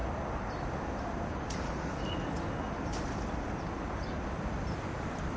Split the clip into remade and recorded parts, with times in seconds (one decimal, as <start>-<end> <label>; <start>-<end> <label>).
0.0-3.2 recorded; 3.2-5.4 remade